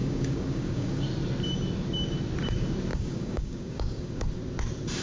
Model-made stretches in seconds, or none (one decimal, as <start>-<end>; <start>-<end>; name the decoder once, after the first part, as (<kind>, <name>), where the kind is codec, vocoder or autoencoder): 0.0-1.0 (codec, DAC); 2.9-4.3